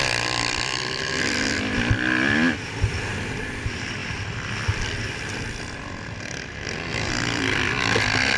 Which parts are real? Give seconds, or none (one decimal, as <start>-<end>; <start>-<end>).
0.0-8.4